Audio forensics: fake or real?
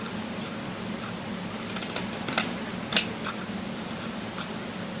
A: real